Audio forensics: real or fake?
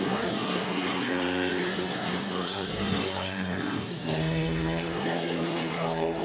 fake